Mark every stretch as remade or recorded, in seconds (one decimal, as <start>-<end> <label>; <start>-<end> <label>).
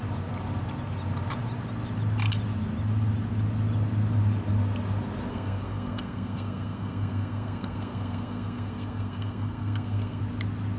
0.0-5.3 recorded; 5.3-10.2 remade; 10.2-10.8 recorded